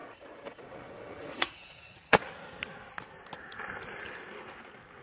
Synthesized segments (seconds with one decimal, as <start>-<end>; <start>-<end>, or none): 0.0-2.2